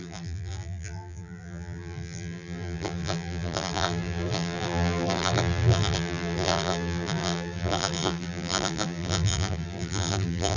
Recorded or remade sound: remade